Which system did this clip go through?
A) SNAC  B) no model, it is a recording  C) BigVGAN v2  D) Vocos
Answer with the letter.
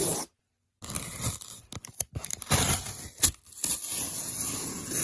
B